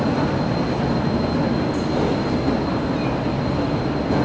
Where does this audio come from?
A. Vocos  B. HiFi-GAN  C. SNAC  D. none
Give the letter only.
D